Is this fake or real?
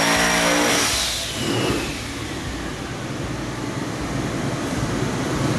real